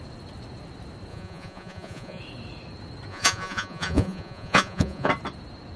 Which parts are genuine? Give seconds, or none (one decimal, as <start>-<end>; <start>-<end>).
0.0-1.1; 2.2-3.1; 5.1-5.8

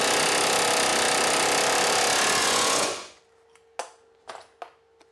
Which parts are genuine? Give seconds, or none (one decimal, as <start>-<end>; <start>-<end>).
0.0-2.4; 3.2-5.1

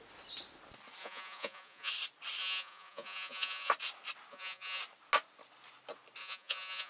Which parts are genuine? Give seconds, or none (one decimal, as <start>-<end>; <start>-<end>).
0.0-1.0; 1.9-2.4; 3.7-4.3; 4.8-6.2

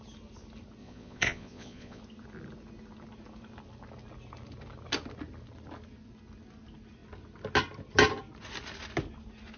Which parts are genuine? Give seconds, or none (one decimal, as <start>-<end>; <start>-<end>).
0.0-0.8; 2.0-9.6

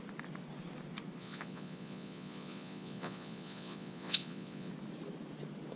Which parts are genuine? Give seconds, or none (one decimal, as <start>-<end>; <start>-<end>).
0.0-1.2; 4.7-5.8

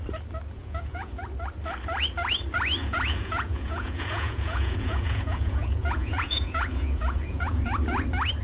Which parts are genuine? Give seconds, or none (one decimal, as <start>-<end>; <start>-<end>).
0.0-0.6; 1.2-2.8; 7.6-8.4

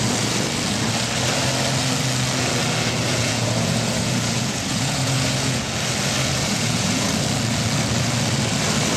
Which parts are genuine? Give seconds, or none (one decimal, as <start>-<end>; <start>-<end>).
0.0-3.1; 5.7-6.2; 7.1-9.0

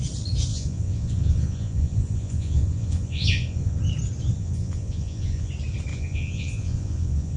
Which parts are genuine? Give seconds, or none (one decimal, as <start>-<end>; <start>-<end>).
0.0-0.5; 3.8-4.4; 5.5-5.9